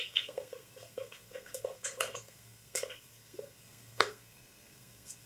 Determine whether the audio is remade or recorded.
remade